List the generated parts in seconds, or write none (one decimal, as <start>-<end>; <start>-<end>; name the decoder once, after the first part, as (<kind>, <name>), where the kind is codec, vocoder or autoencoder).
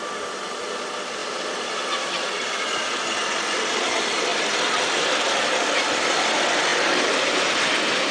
1.2-2.8 (vocoder, BigVGAN v2)